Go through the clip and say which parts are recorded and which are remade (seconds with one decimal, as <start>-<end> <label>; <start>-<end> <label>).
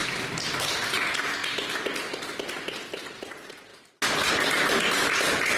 0.0-5.6 recorded